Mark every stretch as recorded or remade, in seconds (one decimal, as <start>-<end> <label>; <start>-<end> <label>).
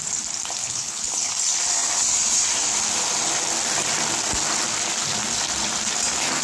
0.0-0.6 recorded; 0.6-1.3 remade; 1.3-6.4 recorded